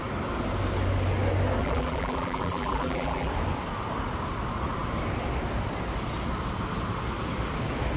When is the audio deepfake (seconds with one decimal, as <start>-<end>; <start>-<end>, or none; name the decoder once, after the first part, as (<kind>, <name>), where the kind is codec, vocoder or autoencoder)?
1.6-3.3 (vocoder, BigVGAN v2)